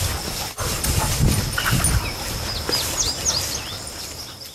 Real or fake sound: real